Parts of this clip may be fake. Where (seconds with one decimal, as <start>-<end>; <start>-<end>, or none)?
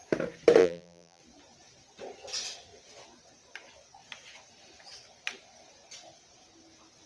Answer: 0.6-1.2